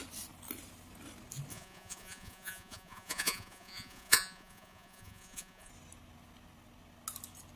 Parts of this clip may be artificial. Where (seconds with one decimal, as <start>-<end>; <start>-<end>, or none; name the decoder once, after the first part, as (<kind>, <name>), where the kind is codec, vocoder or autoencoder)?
1.5-5.7 (vocoder, Vocos)